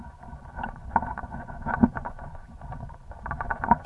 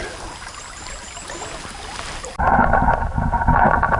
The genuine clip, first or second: second